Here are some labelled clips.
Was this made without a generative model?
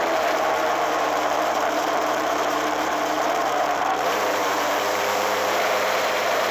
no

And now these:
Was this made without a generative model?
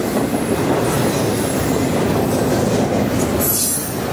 yes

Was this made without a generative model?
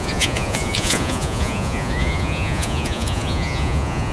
no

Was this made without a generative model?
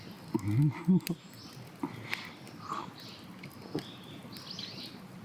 yes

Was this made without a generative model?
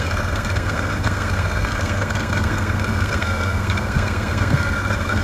no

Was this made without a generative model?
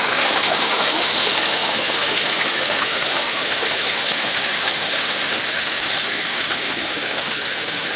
no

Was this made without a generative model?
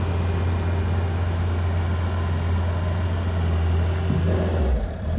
yes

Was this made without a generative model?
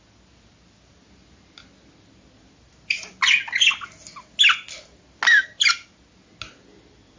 yes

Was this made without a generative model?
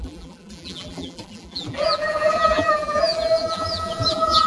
no